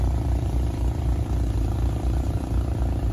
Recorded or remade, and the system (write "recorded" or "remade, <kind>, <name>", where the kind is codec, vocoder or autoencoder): remade, vocoder, BigVGAN v2